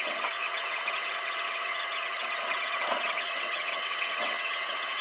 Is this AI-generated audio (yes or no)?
yes